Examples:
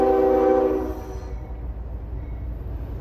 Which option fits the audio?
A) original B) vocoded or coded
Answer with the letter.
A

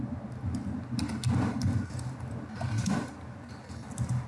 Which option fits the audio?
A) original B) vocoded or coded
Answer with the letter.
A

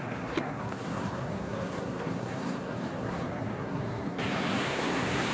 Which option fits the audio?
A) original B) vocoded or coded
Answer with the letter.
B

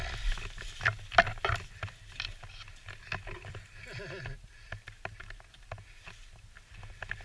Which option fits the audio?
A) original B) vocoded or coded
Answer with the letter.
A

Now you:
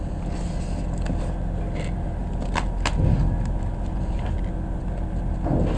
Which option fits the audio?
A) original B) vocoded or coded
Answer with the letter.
A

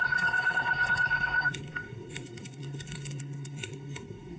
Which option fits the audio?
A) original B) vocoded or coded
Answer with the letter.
B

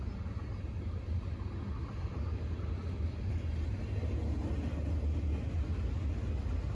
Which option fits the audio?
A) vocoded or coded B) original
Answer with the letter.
B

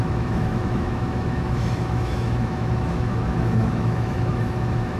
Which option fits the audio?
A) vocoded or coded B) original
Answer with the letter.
A